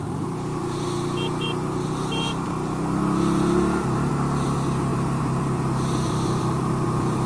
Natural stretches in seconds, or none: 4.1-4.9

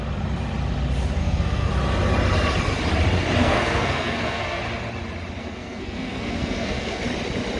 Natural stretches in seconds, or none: 0.0-1.2; 1.7-3.4; 4.6-5.4; 7.0-7.6